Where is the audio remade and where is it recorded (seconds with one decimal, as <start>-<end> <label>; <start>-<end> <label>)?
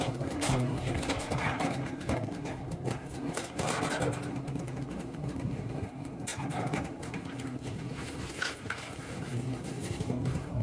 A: 0.0-3.7 remade; 3.7-4.3 recorded; 4.3-10.6 remade